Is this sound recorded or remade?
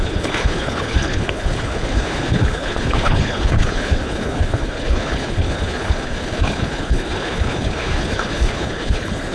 remade